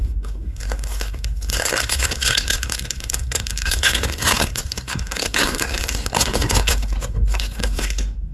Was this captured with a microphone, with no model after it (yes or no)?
no